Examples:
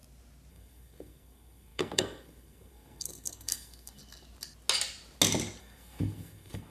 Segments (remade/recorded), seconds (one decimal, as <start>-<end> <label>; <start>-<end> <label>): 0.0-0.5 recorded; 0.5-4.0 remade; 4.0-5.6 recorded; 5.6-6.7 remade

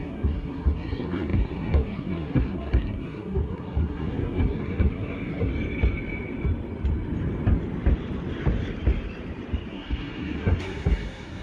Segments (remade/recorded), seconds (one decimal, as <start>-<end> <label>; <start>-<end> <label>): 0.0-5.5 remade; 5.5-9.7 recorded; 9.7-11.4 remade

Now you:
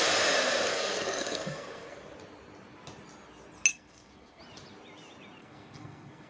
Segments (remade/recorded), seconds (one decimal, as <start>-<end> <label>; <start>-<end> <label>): 0.0-0.7 recorded; 0.7-2.0 remade; 2.0-3.7 recorded; 3.7-4.4 remade; 4.4-5.4 recorded; 5.4-6.3 remade

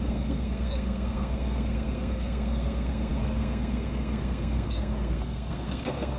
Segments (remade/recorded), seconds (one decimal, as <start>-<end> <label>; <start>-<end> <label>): 0.0-6.2 remade

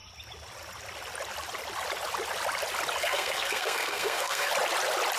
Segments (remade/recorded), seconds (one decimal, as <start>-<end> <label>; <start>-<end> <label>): 0.0-3.0 recorded; 3.0-4.5 remade; 4.5-5.2 recorded

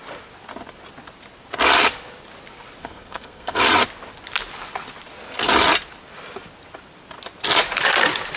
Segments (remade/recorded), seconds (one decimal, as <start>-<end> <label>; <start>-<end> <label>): 0.0-2.8 recorded; 2.8-3.6 remade; 3.6-8.4 recorded

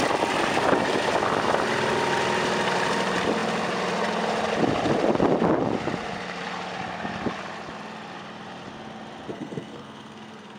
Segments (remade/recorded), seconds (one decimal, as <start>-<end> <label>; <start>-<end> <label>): 0.0-9.3 recorded; 9.3-10.6 remade

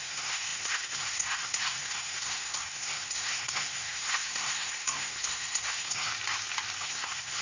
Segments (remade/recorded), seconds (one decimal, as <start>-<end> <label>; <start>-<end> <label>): 0.0-6.1 remade; 6.1-6.8 recorded; 6.8-7.4 remade